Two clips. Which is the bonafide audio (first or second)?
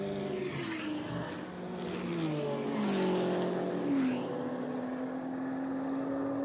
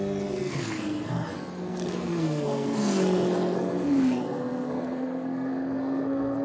first